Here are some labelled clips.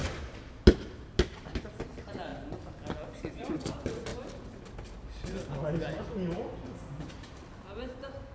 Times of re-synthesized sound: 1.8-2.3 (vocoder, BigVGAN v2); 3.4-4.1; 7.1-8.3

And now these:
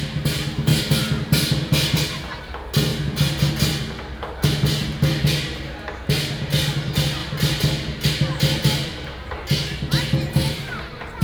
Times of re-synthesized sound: 0.7-2.0 (vocoder, BigVGAN v2)

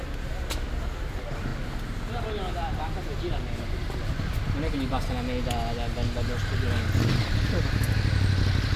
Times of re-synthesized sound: 3.3-4.0 (vocoder, BigVGAN v2)